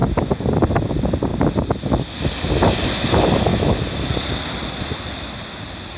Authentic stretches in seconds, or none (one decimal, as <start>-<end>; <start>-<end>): 0.0-3.5; 4.1-6.0